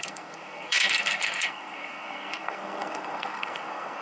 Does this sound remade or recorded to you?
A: remade